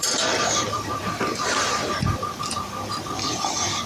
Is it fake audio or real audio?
fake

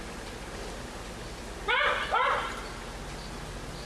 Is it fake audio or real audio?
real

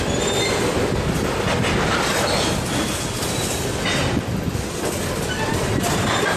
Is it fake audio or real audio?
real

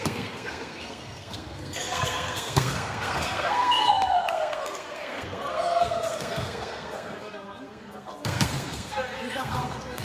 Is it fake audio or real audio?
fake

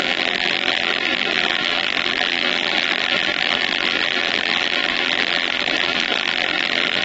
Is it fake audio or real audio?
fake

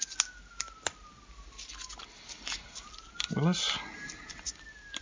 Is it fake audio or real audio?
real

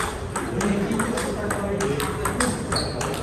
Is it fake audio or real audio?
real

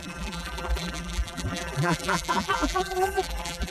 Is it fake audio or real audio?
fake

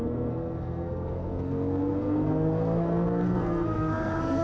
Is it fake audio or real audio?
fake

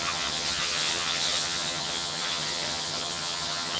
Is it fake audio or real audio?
fake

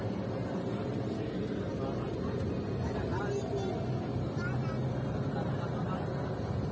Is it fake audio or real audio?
real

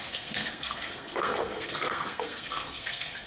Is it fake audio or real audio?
fake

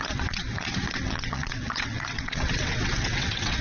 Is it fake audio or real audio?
fake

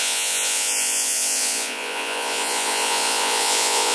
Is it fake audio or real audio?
fake